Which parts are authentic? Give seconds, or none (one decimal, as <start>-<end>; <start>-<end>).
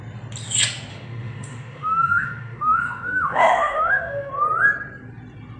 0.0-0.9; 4.3-5.6